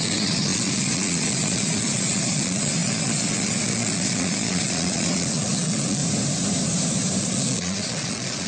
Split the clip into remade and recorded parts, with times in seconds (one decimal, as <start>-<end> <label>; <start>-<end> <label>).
0.0-6.0 remade; 6.0-7.2 recorded; 7.2-8.5 remade